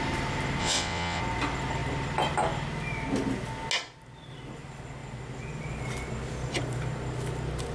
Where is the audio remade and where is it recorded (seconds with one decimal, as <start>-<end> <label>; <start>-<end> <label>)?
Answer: 0.0-0.6 recorded; 0.6-1.2 remade; 1.2-7.7 recorded